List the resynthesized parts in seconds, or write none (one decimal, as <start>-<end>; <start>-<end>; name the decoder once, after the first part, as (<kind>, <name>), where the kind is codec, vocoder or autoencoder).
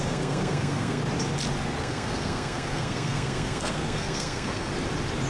0.0-1.0 (codec, SNAC); 1.8-4.7